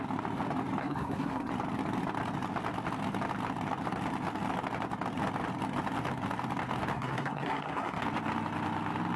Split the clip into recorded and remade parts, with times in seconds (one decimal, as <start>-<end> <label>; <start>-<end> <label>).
0.0-0.8 recorded; 0.8-1.5 remade; 1.5-6.9 recorded; 6.9-8.0 remade; 8.0-9.2 recorded